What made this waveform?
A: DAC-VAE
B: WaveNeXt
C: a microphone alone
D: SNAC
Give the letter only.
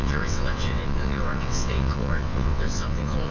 B